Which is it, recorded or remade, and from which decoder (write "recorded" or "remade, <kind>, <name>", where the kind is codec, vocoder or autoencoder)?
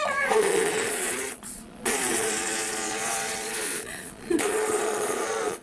remade, vocoder, Vocos